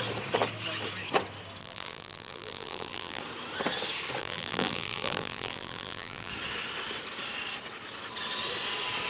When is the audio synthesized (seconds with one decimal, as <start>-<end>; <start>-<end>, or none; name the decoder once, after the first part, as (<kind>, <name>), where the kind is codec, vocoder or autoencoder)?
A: 1.6-3.2 (vocoder, BigVGAN v2); 4.2-6.3